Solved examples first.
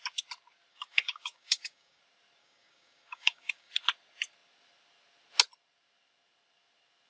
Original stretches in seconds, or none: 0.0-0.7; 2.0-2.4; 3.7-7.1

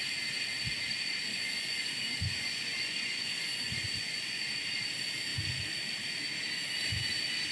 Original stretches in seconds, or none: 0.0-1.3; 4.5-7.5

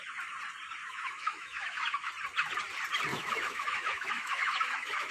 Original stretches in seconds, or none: 0.0-0.8; 2.1-3.1

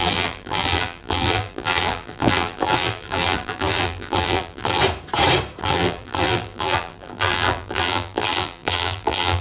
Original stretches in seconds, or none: 4.8-5.6